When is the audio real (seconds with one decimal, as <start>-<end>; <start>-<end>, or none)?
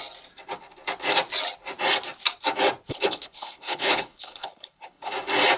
0.0-2.9; 5.1-5.6